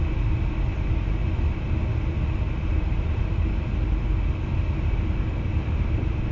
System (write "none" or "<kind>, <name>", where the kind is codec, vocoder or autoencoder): none